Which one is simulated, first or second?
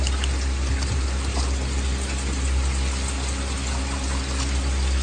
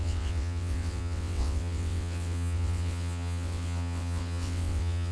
second